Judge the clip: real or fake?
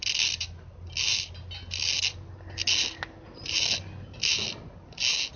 real